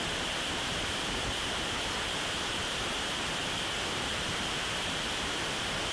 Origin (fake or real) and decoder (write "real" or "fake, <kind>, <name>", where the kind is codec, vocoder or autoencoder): fake, vocoder, BigVGAN v2